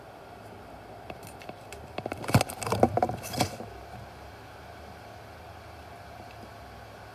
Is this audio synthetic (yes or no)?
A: no